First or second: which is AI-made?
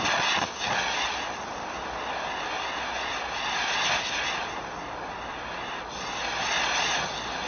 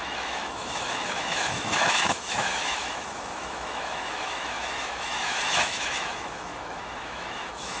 second